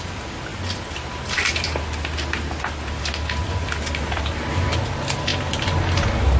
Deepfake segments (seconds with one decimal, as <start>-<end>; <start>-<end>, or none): 0.0-0.5; 4.2-6.4